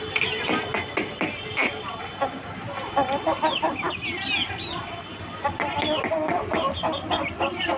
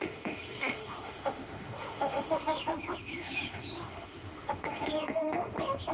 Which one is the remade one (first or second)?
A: second